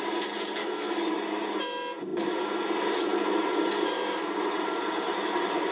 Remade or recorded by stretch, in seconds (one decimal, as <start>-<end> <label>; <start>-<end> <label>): 0.0-0.6 recorded; 0.6-1.2 remade; 1.2-5.7 recorded